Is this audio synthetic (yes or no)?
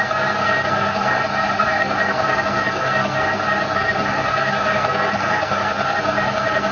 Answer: yes